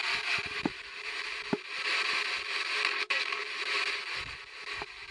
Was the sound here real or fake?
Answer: real